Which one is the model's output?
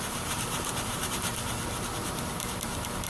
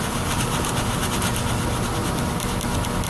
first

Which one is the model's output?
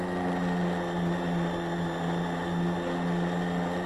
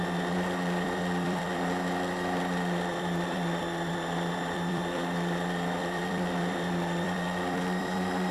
second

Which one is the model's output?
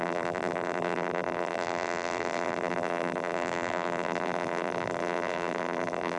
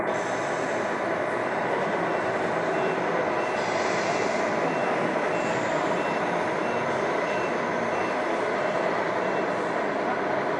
first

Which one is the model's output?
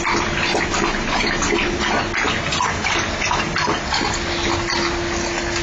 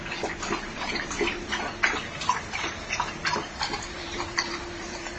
second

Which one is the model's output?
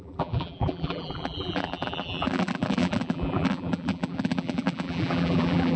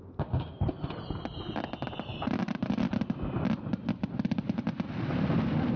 first